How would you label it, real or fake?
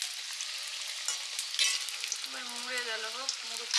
real